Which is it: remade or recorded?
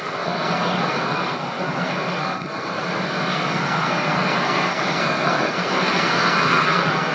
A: remade